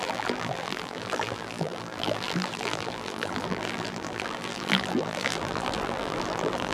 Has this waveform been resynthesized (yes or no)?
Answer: yes